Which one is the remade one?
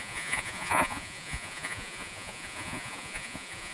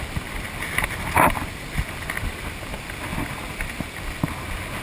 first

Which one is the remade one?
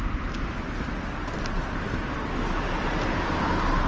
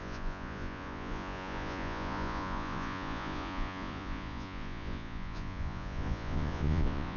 second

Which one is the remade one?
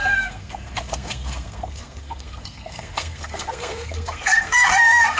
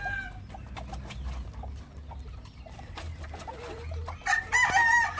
first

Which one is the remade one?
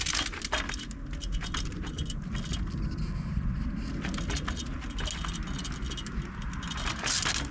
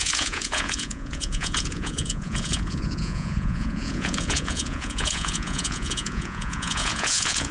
second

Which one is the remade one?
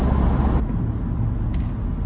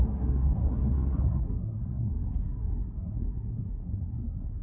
second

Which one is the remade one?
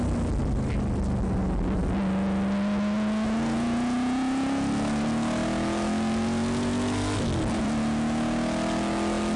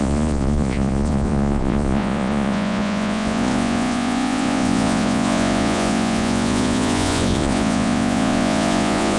second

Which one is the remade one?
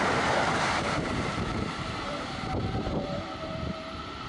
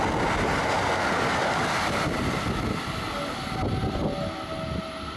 first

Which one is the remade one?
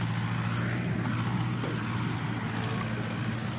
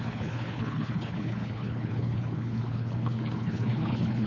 second